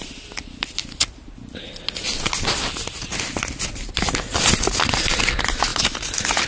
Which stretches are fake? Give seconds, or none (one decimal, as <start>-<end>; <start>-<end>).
none